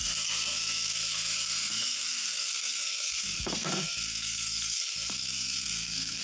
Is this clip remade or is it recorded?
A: remade